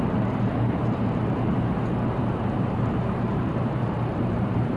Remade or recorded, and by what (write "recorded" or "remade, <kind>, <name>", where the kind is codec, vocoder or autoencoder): remade, vocoder, BigVGAN v2